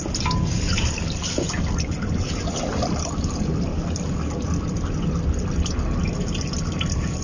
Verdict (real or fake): real